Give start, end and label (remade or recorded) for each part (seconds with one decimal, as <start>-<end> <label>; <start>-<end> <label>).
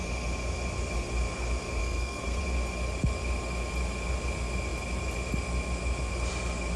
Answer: 0.0-1.8 recorded; 1.8-2.4 remade; 2.4-6.8 recorded